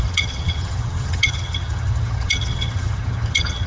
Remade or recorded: remade